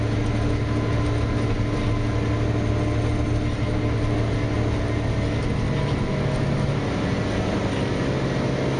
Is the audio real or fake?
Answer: real